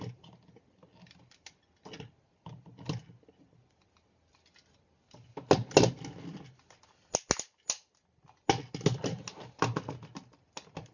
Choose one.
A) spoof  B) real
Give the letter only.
B